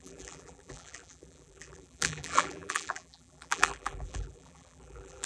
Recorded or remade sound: remade